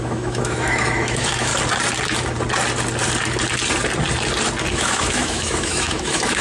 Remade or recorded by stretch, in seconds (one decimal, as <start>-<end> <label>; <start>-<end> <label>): 0.0-1.5 remade; 1.5-4.7 recorded; 4.7-6.4 remade